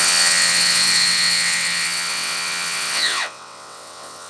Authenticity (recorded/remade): remade